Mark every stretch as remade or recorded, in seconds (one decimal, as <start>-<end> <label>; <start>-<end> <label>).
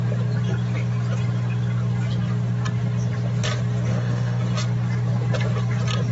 0.0-3.9 recorded; 3.9-4.4 remade; 4.4-6.1 recorded